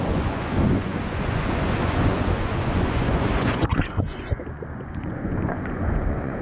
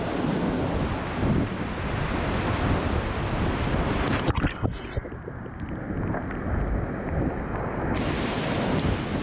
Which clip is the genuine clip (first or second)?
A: second